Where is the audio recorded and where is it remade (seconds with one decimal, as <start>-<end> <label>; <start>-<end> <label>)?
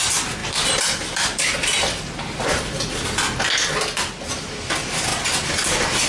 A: 0.0-0.4 recorded; 0.4-2.8 remade; 2.8-6.1 recorded